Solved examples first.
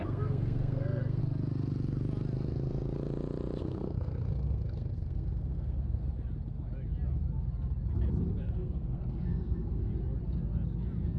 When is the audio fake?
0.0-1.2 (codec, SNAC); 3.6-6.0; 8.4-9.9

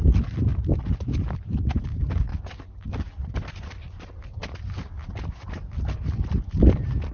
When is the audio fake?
0.5-1.8 (vocoder, BigVGAN v2)

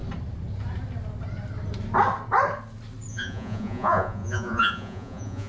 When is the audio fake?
3.1-5.5 (vocoder, Vocos)

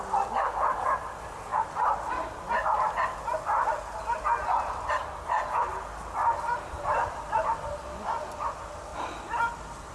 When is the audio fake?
none

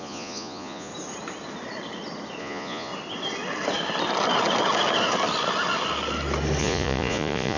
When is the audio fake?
0.0-0.9 (vocoder, Vocos); 2.4-2.9; 6.6-7.6

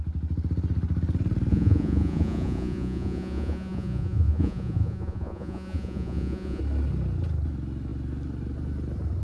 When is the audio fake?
1.5-6.6 (vocoder, Vocos)

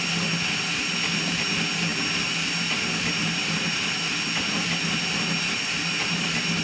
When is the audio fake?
none